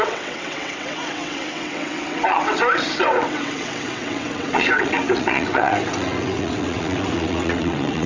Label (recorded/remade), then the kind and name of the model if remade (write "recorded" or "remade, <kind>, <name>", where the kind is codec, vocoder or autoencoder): remade, vocoder, WaveNeXt